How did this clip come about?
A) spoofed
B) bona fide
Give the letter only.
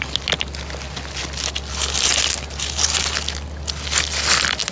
B